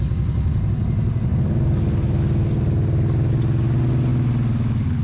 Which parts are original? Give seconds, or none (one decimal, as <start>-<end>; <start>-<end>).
0.0-4.1